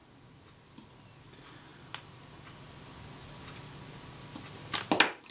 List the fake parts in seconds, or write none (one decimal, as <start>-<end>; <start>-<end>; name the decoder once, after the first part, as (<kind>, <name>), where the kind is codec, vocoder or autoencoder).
none